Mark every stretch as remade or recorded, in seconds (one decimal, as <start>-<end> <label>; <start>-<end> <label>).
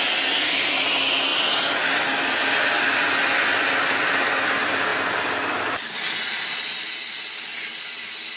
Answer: 0.0-8.4 recorded